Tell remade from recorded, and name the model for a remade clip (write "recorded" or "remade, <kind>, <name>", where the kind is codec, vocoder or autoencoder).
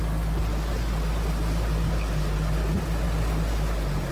recorded